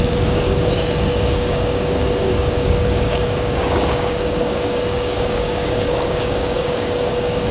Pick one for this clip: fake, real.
fake